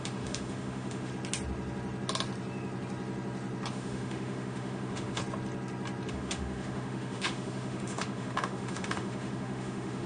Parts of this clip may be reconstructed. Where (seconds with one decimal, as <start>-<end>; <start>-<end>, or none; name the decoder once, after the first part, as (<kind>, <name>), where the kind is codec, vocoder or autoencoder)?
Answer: 0.0-1.1 (autoencoder, DAC-VAE); 3.7-5.2; 6.1-10.1